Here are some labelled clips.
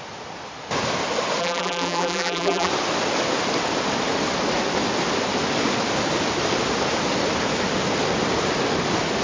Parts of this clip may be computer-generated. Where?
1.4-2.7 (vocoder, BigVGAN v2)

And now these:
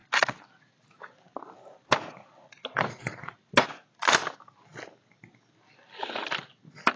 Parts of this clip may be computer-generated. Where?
none

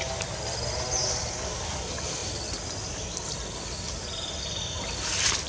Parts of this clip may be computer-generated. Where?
none

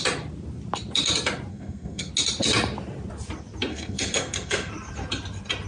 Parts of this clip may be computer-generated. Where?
1.5-2.1 (codec, SNAC); 3.7-4.7

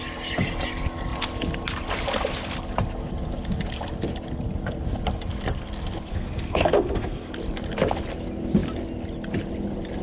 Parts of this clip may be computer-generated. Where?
6.1-7.3 (codec, SNAC)

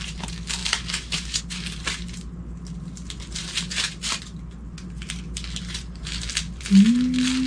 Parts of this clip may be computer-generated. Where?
0.6-1.4 (codec, DAC)

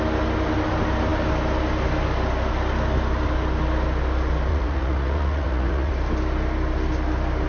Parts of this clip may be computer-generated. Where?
4.5-5.9 (vocoder, Vocos)

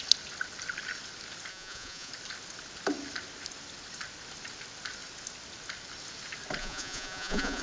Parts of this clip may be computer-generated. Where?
1.5-2.1 (vocoder, Vocos); 6.6-7.6